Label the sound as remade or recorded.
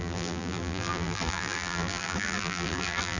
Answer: remade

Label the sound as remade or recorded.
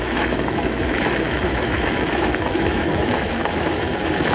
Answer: remade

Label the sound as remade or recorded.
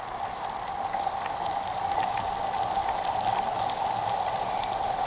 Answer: recorded